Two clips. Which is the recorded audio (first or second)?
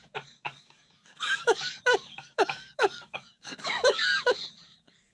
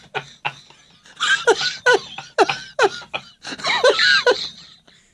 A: second